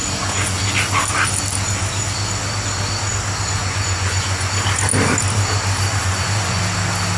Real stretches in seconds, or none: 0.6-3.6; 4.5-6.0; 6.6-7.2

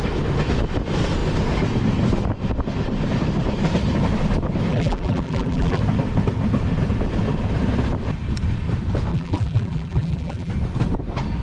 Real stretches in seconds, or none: 0.0-4.7; 5.8-9.1; 10.5-11.4

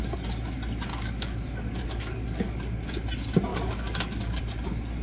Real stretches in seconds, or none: 0.0-0.9; 2.7-3.5; 4.4-5.0

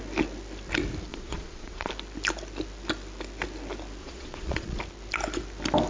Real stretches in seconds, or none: 0.0-1.1; 1.9-4.0; 4.8-5.9

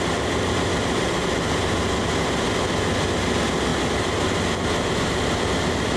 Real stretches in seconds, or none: 0.0-6.0

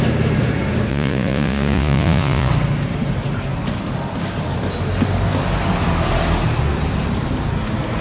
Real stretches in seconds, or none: 0.0-0.9; 2.5-8.0